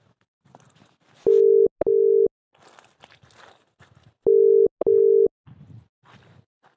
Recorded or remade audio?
recorded